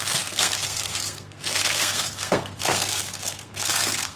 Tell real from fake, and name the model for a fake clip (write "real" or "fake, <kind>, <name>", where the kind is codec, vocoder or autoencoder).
fake, codec, SNAC